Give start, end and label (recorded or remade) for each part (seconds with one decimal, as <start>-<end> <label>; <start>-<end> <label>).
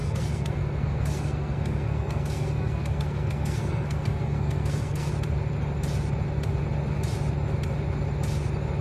0.0-5.1 remade; 5.1-8.8 recorded